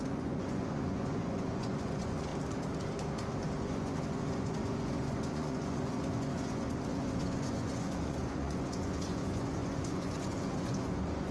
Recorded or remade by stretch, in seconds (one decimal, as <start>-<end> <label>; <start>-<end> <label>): 0.0-2.3 remade; 2.3-3.6 recorded; 3.6-11.3 remade